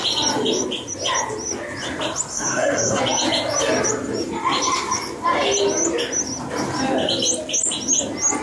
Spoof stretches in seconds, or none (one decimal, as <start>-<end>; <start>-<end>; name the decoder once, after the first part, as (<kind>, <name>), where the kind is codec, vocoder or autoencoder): 2.3-3.0 (codec, SNAC)